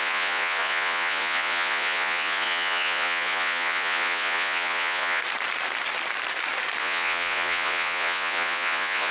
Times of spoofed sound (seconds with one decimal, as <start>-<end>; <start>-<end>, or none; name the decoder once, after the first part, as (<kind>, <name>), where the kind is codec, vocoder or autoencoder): 0.0-5.2 (vocoder, Vocos); 6.8-9.1